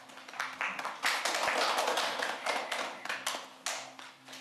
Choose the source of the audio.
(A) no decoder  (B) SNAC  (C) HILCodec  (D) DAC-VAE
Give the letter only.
A